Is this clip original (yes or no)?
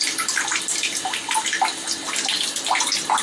yes